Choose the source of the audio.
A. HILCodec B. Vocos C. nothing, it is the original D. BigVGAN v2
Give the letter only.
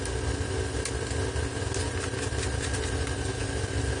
C